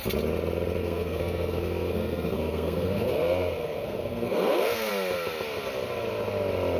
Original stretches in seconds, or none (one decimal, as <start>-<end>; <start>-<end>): 0.0-0.8; 4.9-6.8